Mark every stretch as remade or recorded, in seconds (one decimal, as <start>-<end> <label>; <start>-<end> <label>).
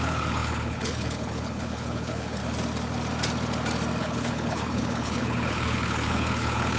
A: 0.0-2.4 remade; 2.4-4.0 recorded; 4.0-6.8 remade